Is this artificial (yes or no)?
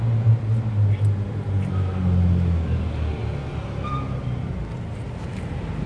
no